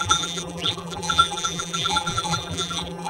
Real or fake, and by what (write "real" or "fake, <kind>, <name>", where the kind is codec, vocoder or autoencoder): fake, vocoder, BigVGAN v2